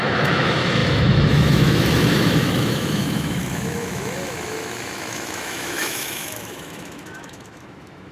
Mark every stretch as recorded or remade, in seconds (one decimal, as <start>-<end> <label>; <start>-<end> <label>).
0.0-8.1 remade